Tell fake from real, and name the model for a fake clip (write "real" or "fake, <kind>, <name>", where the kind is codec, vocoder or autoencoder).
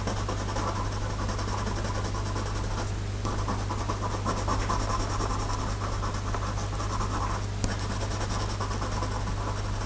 real